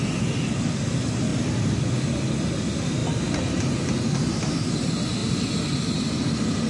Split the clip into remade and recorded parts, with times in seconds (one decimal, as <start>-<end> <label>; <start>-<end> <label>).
0.0-3.0 recorded; 3.0-3.6 remade; 3.6-6.7 recorded